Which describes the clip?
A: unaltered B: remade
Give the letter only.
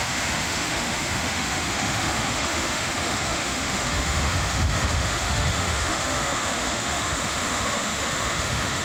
B